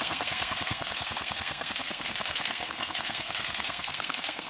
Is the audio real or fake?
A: fake